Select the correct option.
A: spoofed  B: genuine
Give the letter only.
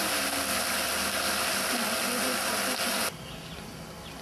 B